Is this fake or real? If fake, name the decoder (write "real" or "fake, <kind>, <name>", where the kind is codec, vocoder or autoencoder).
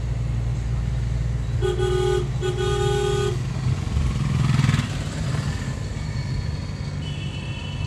real